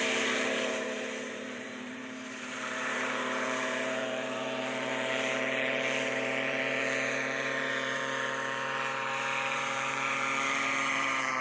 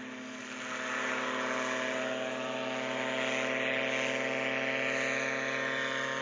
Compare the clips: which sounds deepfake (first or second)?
first